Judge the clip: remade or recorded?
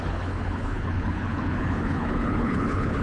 remade